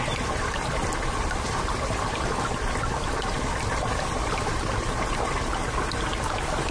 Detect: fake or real real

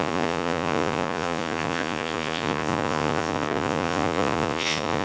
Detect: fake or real fake